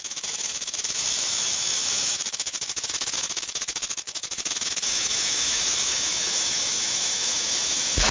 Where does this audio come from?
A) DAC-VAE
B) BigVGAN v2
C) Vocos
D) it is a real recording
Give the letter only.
A